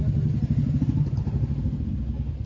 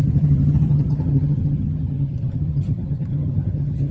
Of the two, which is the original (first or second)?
first